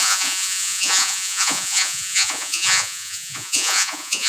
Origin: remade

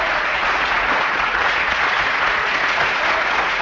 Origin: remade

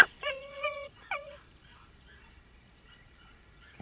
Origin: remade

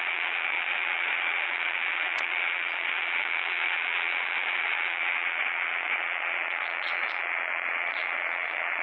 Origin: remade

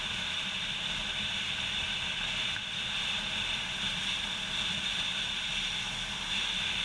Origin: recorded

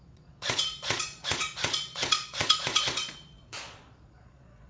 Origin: remade